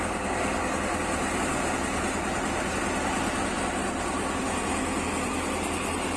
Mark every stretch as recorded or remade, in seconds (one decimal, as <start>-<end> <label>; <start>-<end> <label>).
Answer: 0.0-6.2 recorded